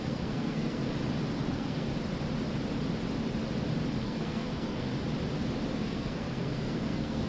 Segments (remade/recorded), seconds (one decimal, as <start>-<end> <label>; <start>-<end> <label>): 0.0-0.9 remade; 0.9-1.5 recorded; 1.5-1.9 remade; 1.9-4.0 recorded; 4.0-4.9 remade; 4.9-5.8 recorded; 5.8-7.3 remade